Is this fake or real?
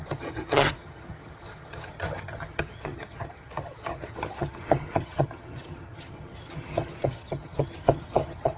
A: fake